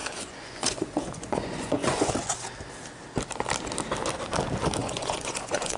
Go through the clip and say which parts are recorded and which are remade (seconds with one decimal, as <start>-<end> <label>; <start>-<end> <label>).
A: 0.0-2.1 remade; 2.1-4.8 recorded; 4.8-5.8 remade